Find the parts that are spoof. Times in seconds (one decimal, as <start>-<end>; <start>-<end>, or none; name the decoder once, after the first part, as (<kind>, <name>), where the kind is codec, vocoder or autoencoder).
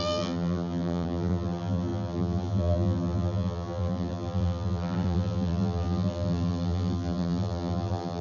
0.0-8.2 (vocoder, BigVGAN v2)